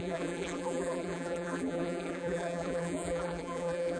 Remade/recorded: remade